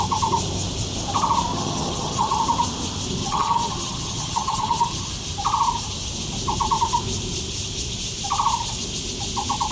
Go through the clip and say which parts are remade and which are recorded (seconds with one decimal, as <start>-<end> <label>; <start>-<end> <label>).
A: 0.0-1.5 recorded; 1.5-2.4 remade; 2.4-3.2 recorded; 3.2-5.1 remade; 5.1-9.7 recorded